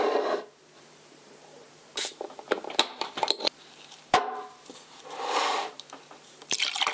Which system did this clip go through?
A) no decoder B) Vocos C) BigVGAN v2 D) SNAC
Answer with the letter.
C